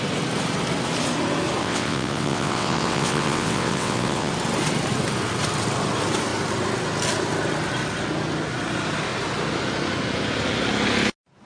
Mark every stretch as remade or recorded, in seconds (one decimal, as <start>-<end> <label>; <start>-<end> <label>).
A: 0.0-1.6 recorded; 1.6-4.3 remade; 4.3-11.5 recorded

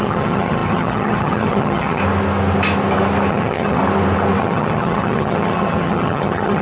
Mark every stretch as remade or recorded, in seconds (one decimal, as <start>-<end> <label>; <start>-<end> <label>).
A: 0.0-2.0 remade; 2.0-3.3 recorded; 3.3-3.8 remade; 3.8-4.4 recorded; 4.4-6.6 remade

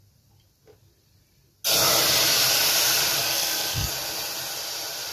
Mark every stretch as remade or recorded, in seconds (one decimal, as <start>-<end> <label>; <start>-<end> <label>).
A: 0.0-3.2 recorded; 3.2-3.9 remade; 3.9-5.1 recorded

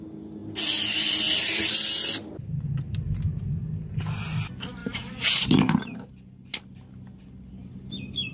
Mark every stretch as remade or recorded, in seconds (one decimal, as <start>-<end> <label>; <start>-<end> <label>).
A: 0.0-4.8 recorded; 4.8-6.1 remade; 6.1-8.3 recorded

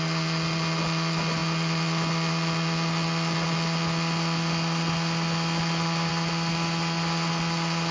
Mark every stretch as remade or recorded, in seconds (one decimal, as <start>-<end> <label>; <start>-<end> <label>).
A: 0.0-7.9 recorded

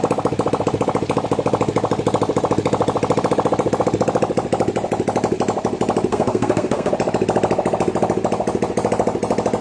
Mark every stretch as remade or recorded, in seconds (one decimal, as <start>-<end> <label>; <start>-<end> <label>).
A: 0.0-6.1 recorded; 6.1-6.9 remade; 6.9-9.6 recorded

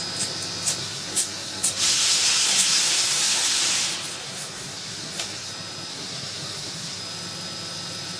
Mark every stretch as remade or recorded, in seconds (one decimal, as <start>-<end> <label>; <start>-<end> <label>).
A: 0.0-0.8 recorded; 0.8-3.6 remade; 3.6-4.2 recorded; 4.2-5.5 remade; 5.5-5.9 recorded; 5.9-7.0 remade; 7.0-8.2 recorded

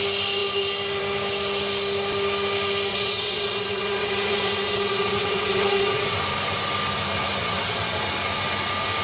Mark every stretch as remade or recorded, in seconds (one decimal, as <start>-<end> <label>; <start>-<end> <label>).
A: 0.0-2.9 recorded; 2.9-6.2 remade; 6.2-7.4 recorded; 7.4-8.0 remade; 8.0-9.0 recorded